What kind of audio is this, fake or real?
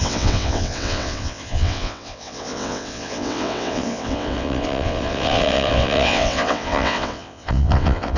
fake